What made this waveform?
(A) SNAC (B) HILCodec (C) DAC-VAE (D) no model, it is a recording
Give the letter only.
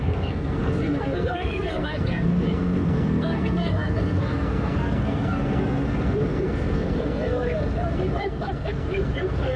A